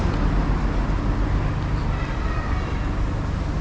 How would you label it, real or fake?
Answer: real